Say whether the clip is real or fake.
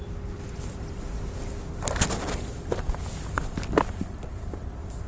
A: real